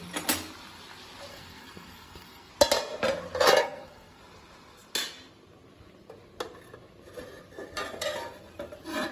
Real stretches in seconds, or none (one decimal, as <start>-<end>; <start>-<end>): 0.0-1.3; 2.5-3.6; 4.2-9.1